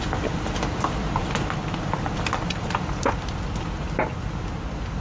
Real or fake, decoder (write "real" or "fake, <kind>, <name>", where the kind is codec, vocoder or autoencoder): real